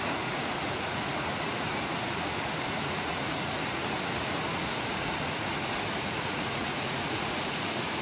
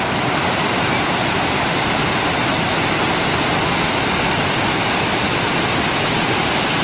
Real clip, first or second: second